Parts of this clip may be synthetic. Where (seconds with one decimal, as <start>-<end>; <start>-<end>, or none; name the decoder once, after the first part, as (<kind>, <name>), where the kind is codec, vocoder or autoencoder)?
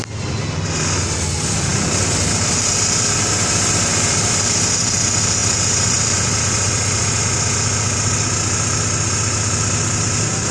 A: 1.7-3.5 (vocoder, BigVGAN v2); 3.9-4.4; 5.4-7.2